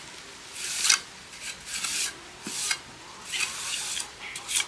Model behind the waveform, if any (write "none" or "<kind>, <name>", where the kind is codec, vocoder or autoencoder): none